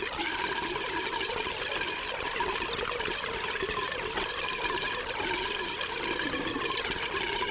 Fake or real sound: real